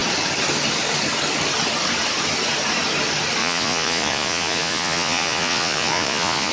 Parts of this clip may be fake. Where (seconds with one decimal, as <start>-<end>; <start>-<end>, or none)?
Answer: 3.4-6.5